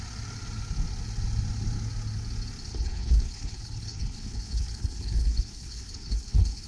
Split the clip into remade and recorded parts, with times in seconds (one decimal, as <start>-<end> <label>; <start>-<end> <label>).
0.0-2.7 recorded; 2.7-6.7 remade